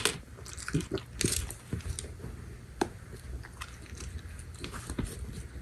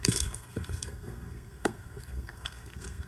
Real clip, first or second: first